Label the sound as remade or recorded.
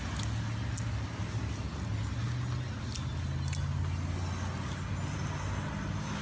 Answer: recorded